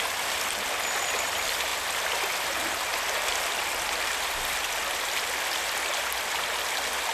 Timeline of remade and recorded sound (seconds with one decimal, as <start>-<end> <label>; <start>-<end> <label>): 0.0-7.1 recorded